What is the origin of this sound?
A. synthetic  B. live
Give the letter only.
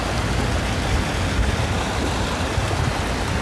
B